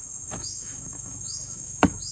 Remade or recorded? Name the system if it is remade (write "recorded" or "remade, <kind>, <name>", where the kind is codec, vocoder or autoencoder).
remade, autoencoder, DAC-VAE